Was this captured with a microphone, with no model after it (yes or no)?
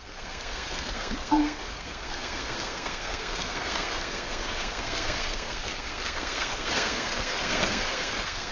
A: no